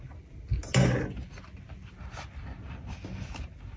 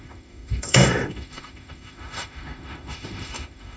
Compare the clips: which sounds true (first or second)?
first